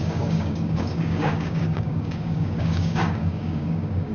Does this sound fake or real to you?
fake